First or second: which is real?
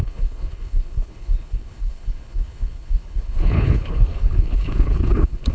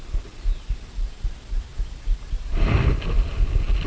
second